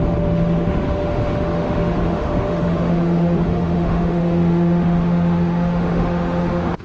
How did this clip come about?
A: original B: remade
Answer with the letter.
B